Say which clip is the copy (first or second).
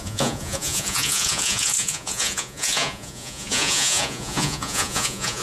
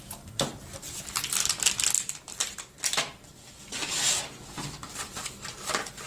first